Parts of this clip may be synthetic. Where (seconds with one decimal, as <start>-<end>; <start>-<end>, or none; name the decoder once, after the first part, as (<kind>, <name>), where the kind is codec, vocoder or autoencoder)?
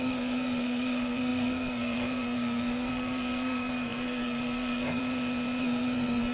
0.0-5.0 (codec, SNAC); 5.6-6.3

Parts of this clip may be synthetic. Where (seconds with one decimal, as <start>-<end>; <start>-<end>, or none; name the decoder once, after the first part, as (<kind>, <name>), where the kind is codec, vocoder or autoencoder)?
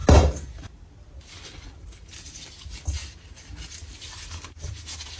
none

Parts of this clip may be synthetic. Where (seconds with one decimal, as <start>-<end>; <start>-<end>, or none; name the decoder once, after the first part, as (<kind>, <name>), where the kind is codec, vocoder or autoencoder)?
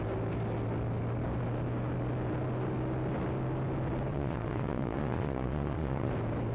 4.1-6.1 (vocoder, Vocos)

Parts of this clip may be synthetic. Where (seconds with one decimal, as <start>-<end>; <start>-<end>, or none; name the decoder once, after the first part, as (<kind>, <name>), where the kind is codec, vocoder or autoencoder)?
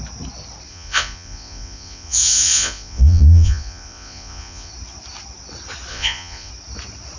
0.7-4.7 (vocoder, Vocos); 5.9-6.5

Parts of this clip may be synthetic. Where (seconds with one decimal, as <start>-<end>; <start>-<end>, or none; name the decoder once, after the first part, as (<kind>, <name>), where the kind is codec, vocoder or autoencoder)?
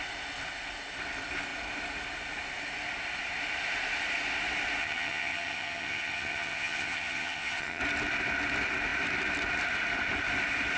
4.8-7.8 (vocoder, HiFi-GAN)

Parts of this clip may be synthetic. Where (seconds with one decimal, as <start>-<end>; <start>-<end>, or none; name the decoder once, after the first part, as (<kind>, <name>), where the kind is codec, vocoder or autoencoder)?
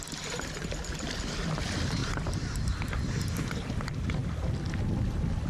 0.0-2.0 (vocoder, BigVGAN v2); 3.4-4.2; 5.1-5.5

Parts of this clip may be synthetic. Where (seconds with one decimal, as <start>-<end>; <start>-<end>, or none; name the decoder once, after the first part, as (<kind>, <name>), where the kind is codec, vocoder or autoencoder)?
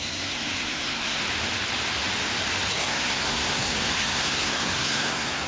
0.0-1.2 (codec, SNAC); 2.7-5.5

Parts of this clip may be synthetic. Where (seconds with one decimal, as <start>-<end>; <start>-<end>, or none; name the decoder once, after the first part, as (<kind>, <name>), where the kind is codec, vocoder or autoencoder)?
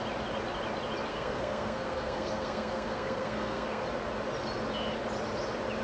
1.1-3.8 (codec, SNAC)